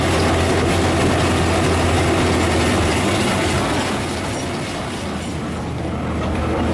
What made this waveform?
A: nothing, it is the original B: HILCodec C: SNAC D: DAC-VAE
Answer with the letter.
A